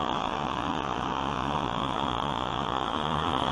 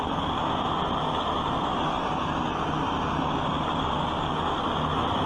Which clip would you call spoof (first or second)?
first